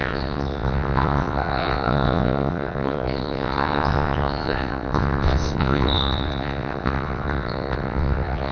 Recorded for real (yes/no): no